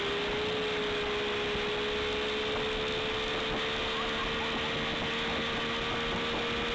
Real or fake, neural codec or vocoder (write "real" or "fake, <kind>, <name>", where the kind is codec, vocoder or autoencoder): real